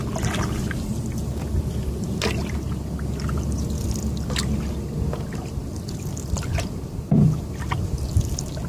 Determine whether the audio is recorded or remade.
recorded